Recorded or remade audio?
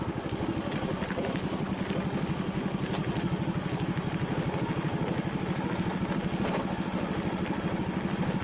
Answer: recorded